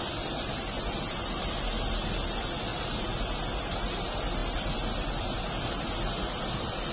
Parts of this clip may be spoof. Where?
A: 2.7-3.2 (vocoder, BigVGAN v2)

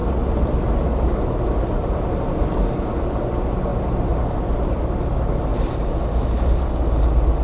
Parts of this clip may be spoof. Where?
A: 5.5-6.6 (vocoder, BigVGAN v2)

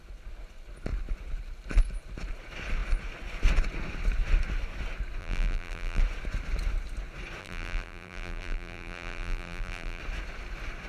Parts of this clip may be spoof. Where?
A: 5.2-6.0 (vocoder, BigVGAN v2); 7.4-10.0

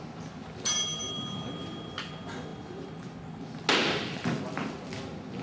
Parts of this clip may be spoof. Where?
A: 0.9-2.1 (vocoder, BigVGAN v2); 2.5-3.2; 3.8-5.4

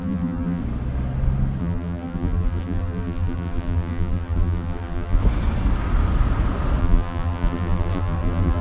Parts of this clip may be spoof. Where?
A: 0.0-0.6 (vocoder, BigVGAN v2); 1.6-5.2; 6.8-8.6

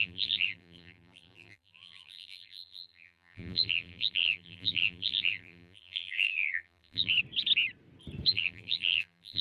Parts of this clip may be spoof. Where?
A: 0.0-7.1 (vocoder, BigVGAN v2); 8.3-9.4

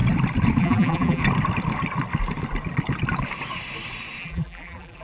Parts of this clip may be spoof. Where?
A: 0.6-1.2 (vocoder, BigVGAN v2); 4.2-5.0

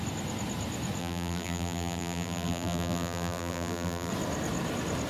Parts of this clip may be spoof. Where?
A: 1.0-4.1 (vocoder, BigVGAN v2)